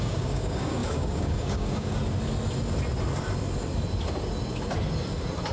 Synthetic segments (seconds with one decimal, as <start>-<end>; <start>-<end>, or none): 0.0-2.0